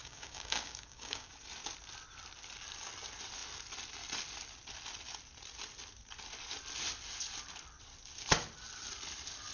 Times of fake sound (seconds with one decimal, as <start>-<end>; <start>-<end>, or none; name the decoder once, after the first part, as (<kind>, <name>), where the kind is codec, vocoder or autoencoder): 0.0-1.3 (codec, DAC)

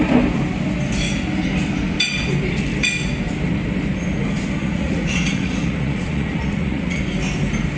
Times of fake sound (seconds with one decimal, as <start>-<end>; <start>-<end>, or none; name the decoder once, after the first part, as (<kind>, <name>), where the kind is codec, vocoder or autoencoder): 4.6-7.0 (vocoder, Vocos)